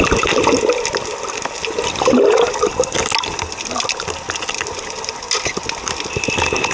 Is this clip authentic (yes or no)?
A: yes